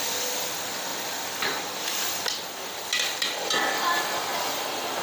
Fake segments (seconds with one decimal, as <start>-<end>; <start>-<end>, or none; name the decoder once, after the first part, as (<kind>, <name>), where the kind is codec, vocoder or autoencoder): none